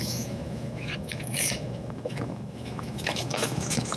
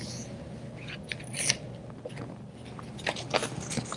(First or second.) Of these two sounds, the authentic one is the second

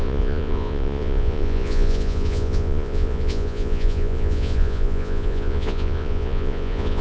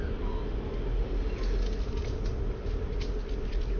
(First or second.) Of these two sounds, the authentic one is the second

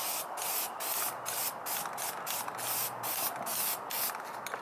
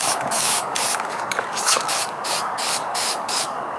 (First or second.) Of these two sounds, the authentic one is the first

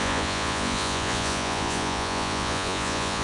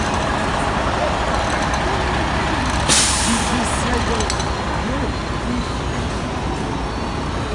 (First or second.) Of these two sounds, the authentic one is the second